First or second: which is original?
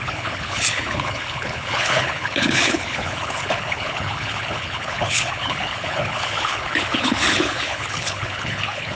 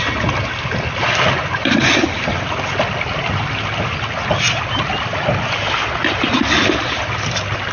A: second